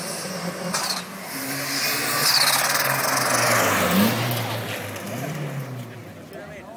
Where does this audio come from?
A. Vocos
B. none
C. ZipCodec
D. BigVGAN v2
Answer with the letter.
B